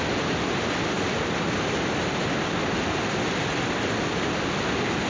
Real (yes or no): yes